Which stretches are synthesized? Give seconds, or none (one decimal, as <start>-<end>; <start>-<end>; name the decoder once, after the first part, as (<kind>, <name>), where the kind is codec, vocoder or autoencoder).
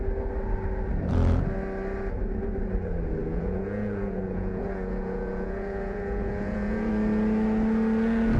3.2-6.9 (vocoder, Vocos)